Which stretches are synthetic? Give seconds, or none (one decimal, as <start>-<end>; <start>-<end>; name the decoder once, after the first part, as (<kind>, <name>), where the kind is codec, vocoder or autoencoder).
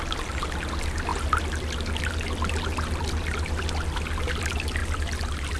none